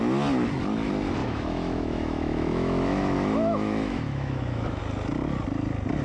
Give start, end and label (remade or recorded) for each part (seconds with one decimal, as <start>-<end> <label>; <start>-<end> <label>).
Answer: 0.0-1.2 recorded; 1.2-4.8 remade; 4.8-6.0 recorded